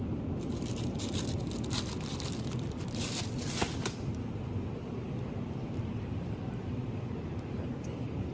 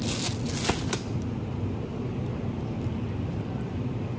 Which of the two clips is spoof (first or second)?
first